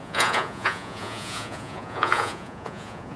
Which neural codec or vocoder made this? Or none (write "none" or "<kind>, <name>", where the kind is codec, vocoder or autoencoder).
vocoder, Vocos